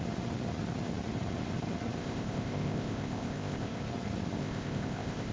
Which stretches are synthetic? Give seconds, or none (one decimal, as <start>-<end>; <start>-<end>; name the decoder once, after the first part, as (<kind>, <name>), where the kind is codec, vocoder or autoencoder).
2.0-3.9 (codec, ZipCodec); 4.4-5.3